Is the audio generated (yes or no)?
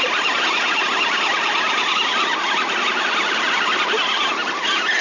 no